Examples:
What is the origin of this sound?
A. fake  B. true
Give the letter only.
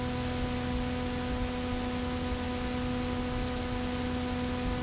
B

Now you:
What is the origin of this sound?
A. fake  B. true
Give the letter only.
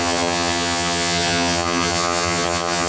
A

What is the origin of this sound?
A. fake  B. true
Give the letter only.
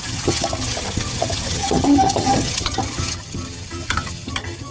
A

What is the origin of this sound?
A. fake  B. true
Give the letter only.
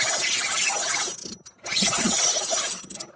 B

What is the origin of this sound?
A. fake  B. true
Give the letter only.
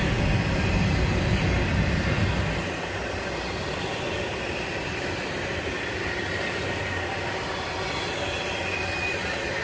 B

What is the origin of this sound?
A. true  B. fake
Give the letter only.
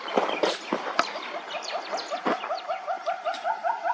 A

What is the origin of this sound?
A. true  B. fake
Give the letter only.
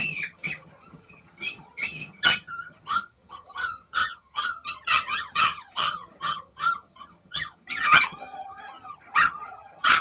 B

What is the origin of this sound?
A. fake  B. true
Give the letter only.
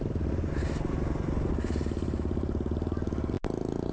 B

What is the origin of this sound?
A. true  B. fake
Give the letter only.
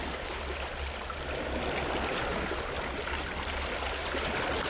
A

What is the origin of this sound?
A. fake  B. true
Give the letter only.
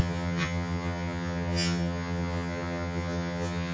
A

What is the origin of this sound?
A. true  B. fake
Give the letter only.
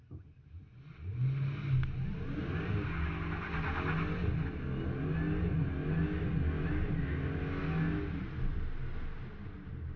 A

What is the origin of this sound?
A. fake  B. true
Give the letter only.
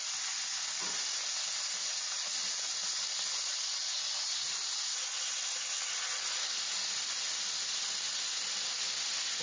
B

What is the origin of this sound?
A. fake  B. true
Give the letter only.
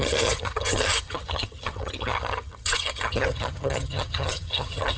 A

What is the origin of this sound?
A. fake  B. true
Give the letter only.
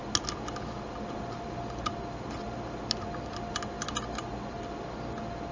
B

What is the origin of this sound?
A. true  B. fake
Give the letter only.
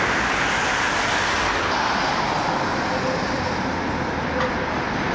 A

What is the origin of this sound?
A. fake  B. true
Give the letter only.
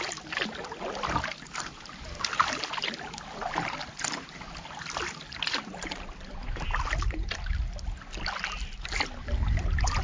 B